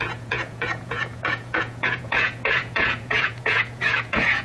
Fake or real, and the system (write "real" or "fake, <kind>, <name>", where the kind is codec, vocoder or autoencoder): fake, vocoder, Vocos